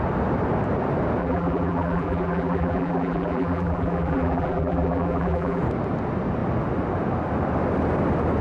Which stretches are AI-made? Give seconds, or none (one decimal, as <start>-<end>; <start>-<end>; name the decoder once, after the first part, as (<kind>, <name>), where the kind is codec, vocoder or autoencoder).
1.2-5.6 (vocoder, BigVGAN v2)

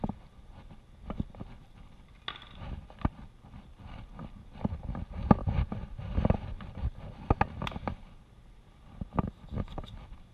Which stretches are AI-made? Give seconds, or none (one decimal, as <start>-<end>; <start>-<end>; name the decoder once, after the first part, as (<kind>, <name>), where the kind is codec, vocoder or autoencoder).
none

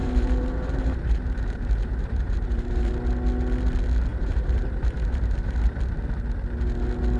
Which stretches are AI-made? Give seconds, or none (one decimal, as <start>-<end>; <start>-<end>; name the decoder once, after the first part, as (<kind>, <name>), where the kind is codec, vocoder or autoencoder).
0.0-2.9 (vocoder, BigVGAN v2); 4.1-5.9

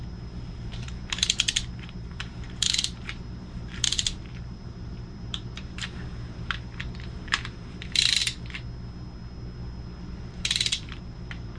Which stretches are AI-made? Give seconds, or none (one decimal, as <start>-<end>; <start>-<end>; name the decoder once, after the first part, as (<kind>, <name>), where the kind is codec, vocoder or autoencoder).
0.0-8.2 (vocoder, BigVGAN v2); 10.0-11.6